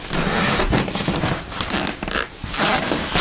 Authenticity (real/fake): fake